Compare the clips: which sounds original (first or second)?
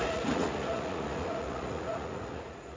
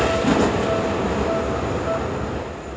second